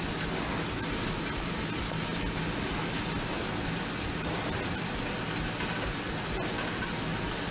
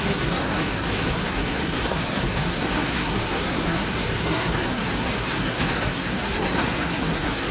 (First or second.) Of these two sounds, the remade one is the second